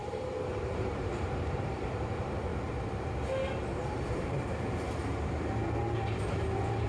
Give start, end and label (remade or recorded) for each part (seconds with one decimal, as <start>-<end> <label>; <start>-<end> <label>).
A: 0.0-2.5 remade; 2.5-6.9 recorded